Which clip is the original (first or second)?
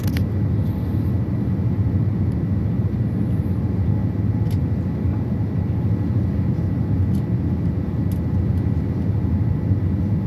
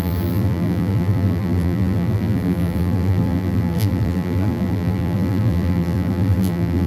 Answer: first